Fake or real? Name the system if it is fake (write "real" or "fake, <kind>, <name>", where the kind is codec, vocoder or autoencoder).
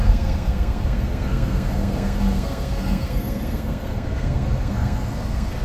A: fake, codec, SNAC